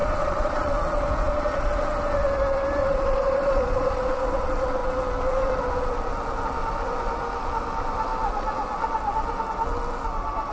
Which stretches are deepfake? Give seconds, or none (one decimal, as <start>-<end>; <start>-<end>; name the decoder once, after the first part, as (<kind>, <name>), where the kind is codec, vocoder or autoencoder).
0.0-0.7 (vocoder, Vocos); 2.8-4.0